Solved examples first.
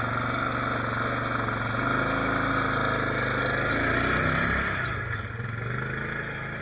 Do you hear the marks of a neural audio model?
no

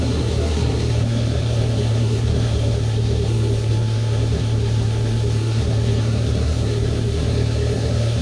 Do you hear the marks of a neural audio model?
yes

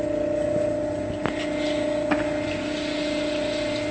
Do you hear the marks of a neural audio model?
no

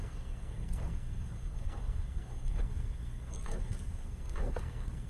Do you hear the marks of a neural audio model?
yes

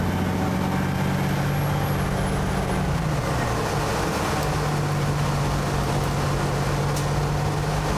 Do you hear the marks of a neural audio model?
no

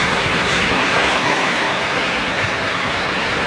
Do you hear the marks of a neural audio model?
yes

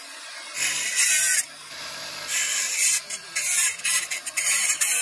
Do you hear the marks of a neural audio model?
no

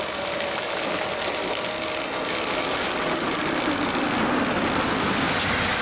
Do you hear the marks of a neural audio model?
no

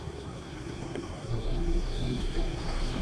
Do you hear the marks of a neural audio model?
yes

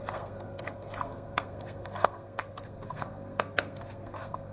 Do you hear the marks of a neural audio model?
yes